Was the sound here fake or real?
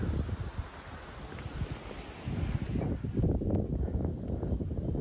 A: real